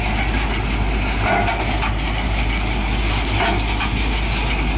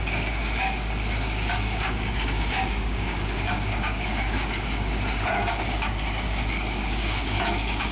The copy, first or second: second